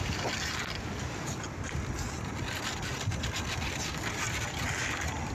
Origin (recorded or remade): recorded